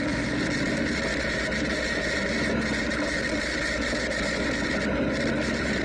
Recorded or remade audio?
recorded